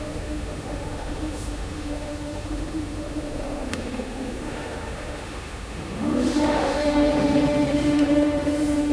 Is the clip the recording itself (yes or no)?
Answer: no